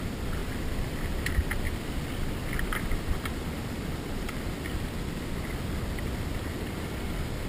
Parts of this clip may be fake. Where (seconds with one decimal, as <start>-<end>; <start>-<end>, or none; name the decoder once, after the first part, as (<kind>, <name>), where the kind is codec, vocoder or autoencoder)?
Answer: none

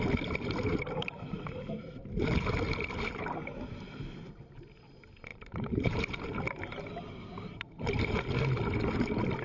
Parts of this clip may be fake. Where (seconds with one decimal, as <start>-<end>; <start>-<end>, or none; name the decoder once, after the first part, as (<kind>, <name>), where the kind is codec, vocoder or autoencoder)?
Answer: 5.3-6.0 (vocoder, BigVGAN v2)

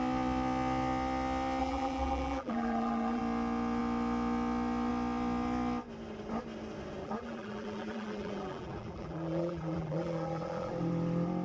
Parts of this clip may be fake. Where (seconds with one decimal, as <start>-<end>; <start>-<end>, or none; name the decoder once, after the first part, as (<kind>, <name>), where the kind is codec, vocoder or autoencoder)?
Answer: 1.6-3.2 (vocoder, BigVGAN v2); 7.0-10.7

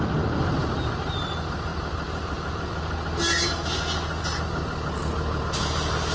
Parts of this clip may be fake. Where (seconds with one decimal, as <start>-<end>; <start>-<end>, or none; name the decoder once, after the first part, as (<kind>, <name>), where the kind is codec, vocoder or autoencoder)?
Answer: none

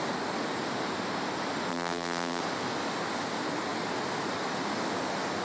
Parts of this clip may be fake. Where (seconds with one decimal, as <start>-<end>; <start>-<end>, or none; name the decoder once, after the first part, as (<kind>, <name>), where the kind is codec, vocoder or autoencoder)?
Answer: 1.7-2.4 (vocoder, BigVGAN v2)

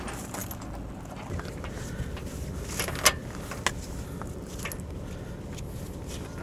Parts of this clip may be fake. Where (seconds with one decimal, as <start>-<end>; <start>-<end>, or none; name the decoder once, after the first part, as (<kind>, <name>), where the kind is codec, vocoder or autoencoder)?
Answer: none

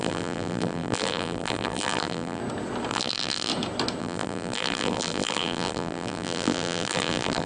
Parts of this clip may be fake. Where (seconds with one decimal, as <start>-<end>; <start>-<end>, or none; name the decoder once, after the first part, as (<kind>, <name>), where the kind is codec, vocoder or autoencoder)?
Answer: 0.0-2.4 (vocoder, BigVGAN v2); 2.9-3.5; 4.0-7.5

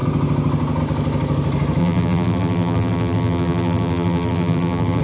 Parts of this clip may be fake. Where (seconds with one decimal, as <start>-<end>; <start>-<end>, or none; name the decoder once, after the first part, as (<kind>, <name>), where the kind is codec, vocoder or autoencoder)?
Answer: 1.8-5.0 (vocoder, BigVGAN v2)